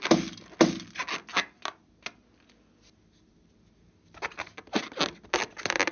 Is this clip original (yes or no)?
yes